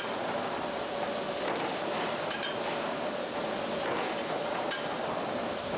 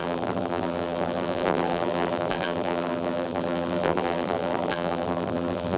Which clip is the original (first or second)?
first